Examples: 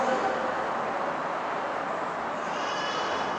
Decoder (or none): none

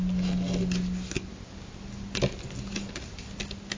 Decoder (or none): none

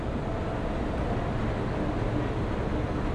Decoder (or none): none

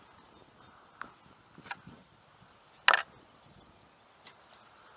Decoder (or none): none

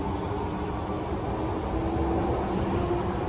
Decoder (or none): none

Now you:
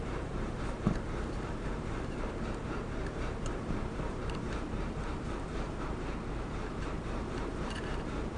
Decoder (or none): vocoder, BigVGAN v2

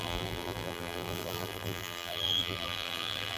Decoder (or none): vocoder, BigVGAN v2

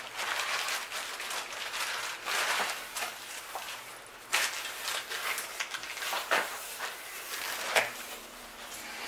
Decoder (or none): none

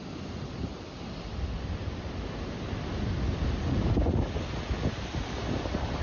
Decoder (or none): none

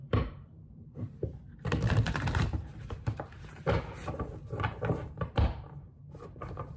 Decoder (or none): vocoder, BigVGAN v2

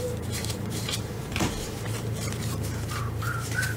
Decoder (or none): vocoder, BigVGAN v2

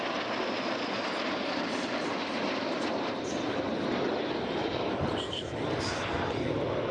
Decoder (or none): vocoder, BigVGAN v2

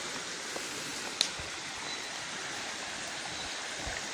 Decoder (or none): none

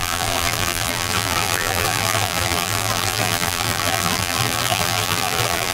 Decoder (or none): vocoder, BigVGAN v2